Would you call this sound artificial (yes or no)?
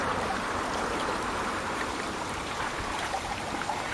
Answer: yes